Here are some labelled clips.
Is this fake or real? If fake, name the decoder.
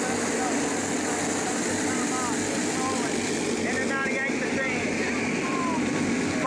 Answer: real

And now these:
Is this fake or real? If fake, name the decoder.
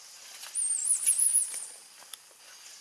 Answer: real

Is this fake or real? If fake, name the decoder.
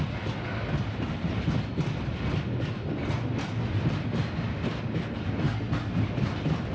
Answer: real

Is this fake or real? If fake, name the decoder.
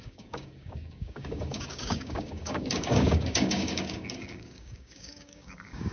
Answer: fake, codec, DAC